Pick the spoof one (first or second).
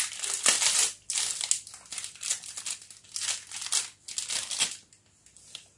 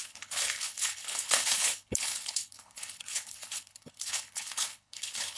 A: second